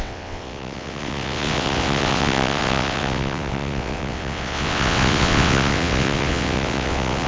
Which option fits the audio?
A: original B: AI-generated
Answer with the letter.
B